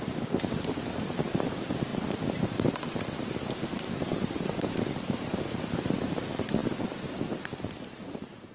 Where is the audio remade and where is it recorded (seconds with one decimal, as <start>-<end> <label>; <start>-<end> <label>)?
0.0-1.9 remade; 1.9-3.2 recorded; 3.2-8.5 remade